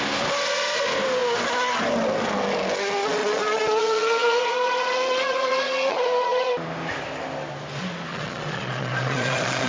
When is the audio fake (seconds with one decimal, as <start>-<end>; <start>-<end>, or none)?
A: 3.2-6.5; 8.1-9.7